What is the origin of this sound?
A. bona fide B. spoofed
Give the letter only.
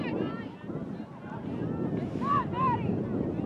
A